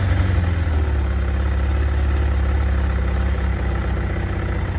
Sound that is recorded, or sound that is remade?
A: recorded